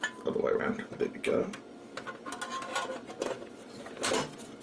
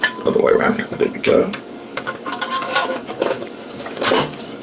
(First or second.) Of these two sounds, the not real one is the second